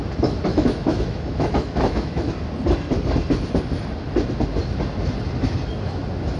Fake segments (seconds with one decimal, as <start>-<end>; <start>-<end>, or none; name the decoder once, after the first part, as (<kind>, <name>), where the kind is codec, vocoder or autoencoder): 0.5-2.3 (autoencoder, DAC-VAE)